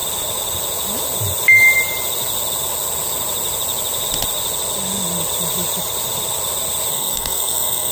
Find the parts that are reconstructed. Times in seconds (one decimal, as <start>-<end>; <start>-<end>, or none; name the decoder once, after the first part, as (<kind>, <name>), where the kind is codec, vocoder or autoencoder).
6.9-7.9 (codec, SNAC)